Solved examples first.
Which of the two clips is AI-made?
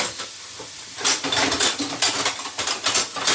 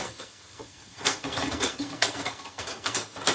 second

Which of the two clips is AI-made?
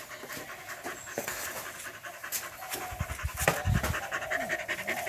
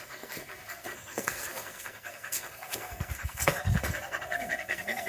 second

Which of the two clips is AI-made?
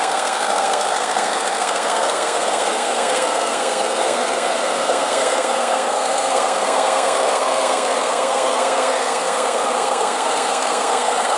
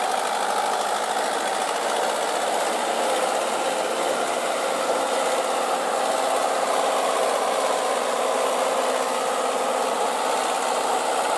first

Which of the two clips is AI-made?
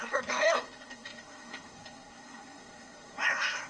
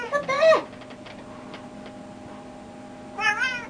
first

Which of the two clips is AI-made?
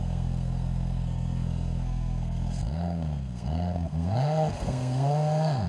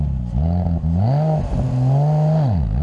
first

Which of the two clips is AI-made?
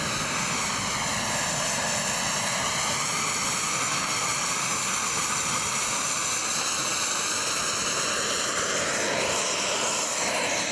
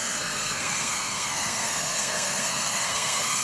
second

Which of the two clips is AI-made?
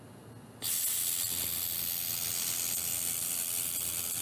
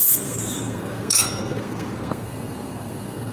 second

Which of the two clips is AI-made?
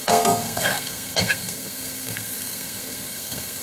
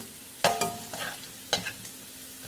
first